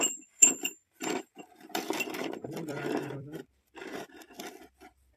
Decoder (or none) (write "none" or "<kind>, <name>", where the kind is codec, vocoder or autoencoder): vocoder, BigVGAN v2